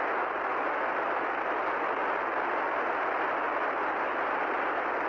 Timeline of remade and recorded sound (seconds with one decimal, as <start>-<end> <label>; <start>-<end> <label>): 0.0-5.1 recorded

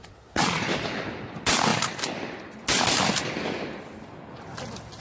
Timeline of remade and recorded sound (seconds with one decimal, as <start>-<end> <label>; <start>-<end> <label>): 0.0-0.6 remade; 0.6-5.0 recorded